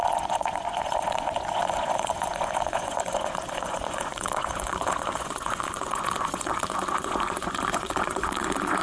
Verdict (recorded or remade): remade